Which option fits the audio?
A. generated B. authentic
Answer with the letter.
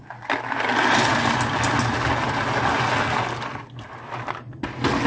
B